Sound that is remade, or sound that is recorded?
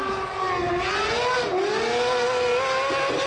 recorded